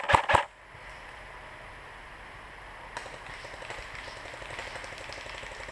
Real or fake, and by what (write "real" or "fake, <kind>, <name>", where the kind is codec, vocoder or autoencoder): real